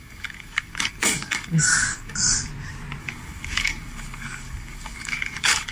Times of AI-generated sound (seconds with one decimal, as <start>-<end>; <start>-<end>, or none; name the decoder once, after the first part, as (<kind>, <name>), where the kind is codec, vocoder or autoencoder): 0.0-2.5 (codec, DAC); 3.0-5.7